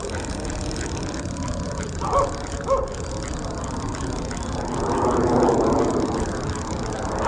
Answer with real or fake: real